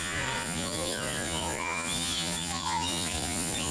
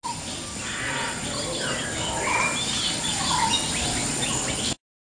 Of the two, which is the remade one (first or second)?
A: first